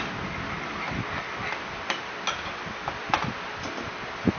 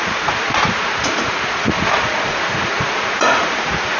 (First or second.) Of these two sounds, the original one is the first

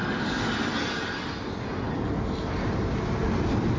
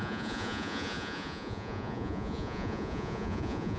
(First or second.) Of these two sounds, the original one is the first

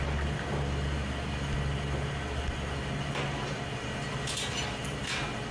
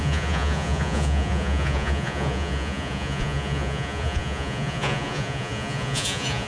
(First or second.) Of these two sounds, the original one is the first